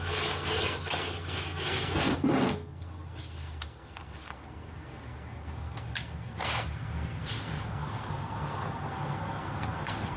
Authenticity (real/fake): fake